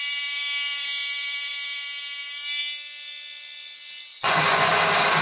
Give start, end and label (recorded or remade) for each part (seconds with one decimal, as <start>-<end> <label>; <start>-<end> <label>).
0.0-4.1 recorded; 4.1-4.7 remade; 4.7-5.2 recorded